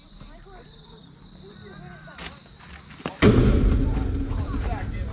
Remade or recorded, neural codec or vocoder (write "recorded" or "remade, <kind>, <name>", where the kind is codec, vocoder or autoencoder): recorded